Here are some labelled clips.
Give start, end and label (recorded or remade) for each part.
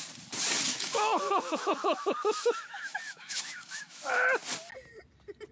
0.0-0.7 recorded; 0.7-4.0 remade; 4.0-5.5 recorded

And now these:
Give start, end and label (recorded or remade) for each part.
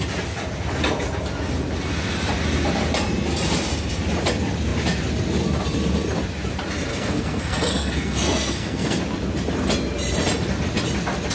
0.0-6.9 recorded; 6.9-9.0 remade; 9.0-11.3 recorded